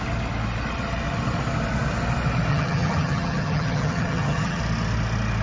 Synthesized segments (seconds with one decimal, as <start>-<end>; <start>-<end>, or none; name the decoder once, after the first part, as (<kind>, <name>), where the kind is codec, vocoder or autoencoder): 2.5-4.6 (vocoder, HiFi-GAN)